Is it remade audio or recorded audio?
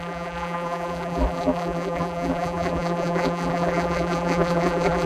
remade